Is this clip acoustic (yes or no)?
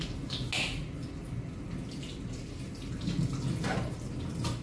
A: yes